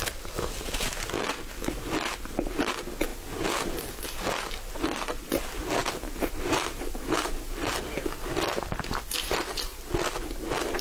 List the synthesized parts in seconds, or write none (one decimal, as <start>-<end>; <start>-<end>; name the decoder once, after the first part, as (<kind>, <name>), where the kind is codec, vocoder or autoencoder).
5.8-7.2 (vocoder, BigVGAN v2)